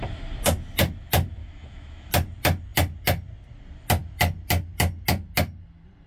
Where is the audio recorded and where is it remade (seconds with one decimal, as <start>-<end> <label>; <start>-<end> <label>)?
0.0-1.4 recorded; 1.4-2.1 remade; 2.1-6.1 recorded